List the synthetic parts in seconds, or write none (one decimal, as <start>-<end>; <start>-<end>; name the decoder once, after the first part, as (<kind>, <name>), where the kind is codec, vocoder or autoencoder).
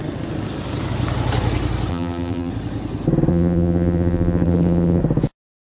1.9-2.5 (vocoder, BigVGAN v2); 3.3-5.0